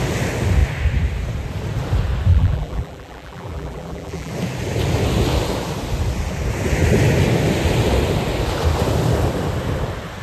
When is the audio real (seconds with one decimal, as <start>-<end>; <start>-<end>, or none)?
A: 0.0-2.3; 4.3-10.2